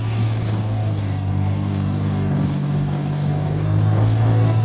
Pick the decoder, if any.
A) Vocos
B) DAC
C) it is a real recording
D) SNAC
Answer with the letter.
B